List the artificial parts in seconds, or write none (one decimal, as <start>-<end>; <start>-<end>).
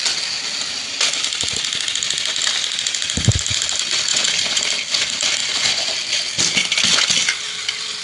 4.1-4.6; 5.4-5.9